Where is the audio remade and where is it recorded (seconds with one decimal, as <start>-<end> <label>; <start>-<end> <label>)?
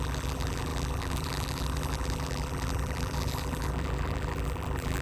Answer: 0.0-5.0 remade